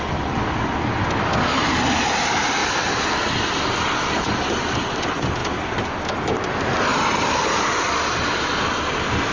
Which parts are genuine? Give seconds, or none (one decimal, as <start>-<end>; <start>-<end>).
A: 0.0-6.9; 7.6-9.3